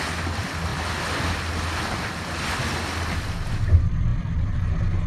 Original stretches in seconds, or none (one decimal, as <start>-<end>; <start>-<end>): 0.0-4.1